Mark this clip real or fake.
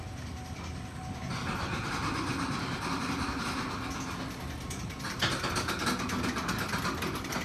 real